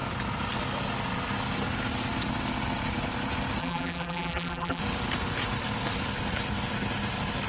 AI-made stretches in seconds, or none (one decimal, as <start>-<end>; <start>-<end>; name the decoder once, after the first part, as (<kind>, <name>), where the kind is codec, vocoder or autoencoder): 3.6-4.8 (vocoder, BigVGAN v2)